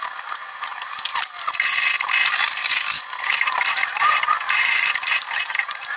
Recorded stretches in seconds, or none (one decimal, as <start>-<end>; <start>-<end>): 1.1-3.2